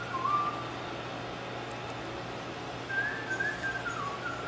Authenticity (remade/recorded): recorded